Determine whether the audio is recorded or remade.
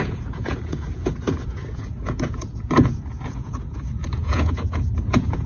remade